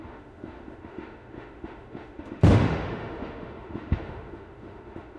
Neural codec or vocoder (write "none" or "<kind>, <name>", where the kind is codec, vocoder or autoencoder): autoencoder, DAC-VAE